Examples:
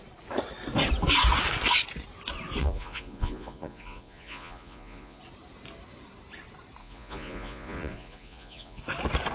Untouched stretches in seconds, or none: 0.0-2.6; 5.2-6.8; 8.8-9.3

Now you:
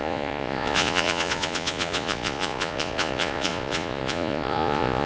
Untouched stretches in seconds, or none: none

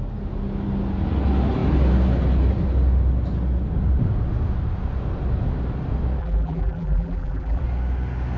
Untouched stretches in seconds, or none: 0.0-6.2; 7.6-8.4